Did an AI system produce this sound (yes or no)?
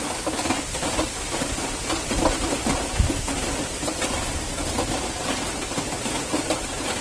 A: no